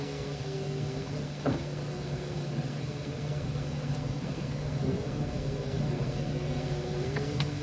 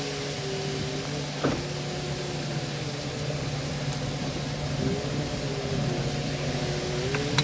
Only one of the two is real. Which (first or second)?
second